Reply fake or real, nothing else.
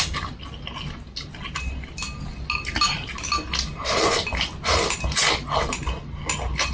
real